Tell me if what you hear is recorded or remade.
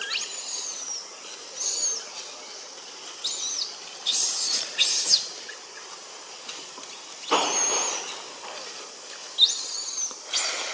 recorded